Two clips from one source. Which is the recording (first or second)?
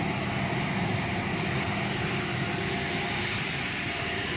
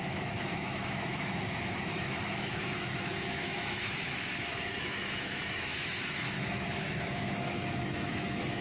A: first